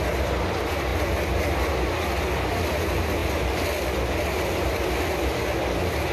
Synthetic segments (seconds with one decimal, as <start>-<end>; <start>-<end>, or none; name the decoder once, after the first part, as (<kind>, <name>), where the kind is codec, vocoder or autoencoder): none